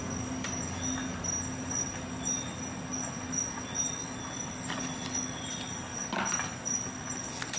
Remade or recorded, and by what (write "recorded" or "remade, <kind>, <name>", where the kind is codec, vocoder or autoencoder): recorded